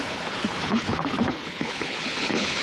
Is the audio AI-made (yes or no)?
yes